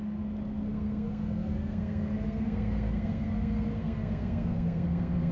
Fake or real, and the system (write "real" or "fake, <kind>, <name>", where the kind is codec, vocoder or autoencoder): fake, codec, SNAC